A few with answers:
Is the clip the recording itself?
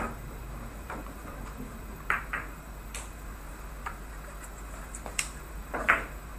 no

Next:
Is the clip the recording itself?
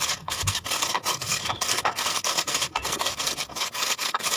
no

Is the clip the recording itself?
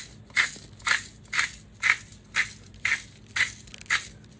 yes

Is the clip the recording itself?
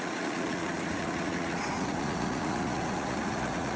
no